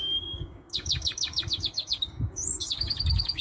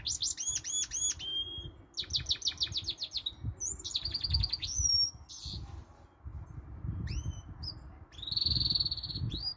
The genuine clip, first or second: second